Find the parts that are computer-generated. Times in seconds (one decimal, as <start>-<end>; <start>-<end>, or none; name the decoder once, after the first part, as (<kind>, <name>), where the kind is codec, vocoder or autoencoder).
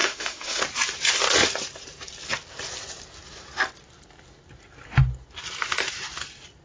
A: 0.0-0.6 (autoencoder, DAC-VAE)